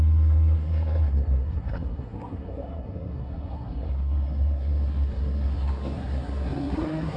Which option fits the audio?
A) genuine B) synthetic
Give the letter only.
B